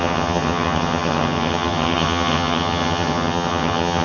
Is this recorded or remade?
remade